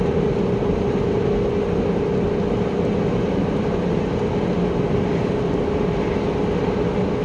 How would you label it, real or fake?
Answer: real